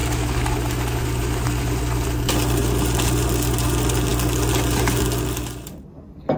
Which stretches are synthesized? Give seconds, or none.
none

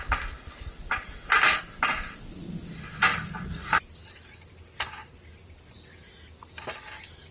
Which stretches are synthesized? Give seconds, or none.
none

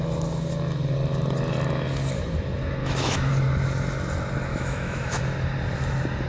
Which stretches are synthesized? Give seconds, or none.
2.8-3.3 (autoencoder, DAC-VAE); 4.5-5.2

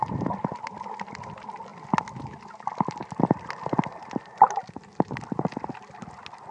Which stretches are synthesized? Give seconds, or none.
none

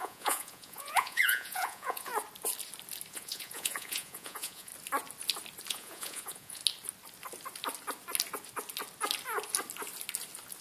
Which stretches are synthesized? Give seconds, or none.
0.0-2.1 (vocoder, Vocos); 3.1-4.7; 5.7-6.6